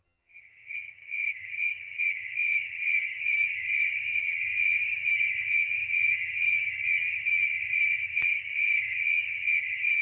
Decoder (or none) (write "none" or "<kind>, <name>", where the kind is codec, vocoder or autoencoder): vocoder, HiFi-GAN